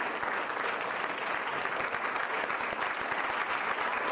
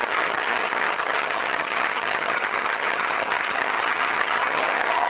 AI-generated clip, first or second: second